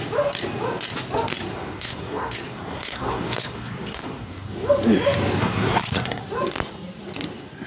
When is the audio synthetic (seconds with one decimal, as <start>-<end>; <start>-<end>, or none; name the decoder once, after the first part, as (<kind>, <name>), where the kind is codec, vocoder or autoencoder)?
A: 1.5-4.5 (codec, SNAC); 5.4-6.2